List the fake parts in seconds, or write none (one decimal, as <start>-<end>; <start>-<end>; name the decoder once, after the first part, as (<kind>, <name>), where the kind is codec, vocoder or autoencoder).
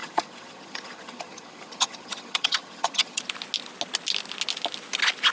0.0-3.2 (vocoder, HiFi-GAN)